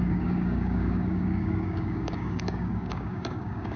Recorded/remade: remade